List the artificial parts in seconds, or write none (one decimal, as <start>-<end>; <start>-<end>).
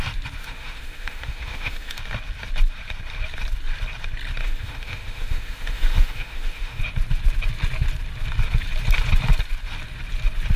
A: 0.4-2.0; 4.4-6.8